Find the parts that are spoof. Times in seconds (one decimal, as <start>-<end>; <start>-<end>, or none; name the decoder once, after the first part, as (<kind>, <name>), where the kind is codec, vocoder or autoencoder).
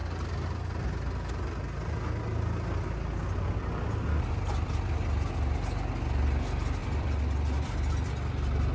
6.8-8.1 (vocoder, BigVGAN v2)